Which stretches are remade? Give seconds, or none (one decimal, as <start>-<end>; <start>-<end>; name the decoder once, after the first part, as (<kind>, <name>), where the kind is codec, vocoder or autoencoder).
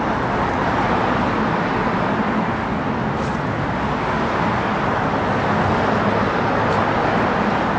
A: none